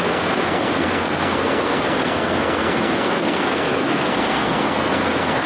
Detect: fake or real fake